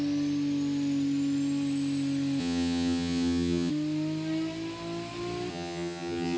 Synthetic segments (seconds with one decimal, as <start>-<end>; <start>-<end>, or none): 2.4-3.7; 5.5-6.4